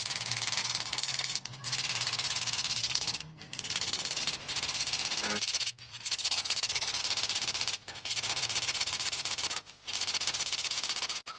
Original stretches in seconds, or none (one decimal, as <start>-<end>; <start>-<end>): 0.0-0.6; 1.5-2.8; 4.2-5.9; 7.0-11.4